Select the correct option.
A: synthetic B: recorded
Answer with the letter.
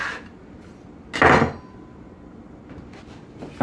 B